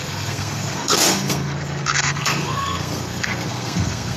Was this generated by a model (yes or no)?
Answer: yes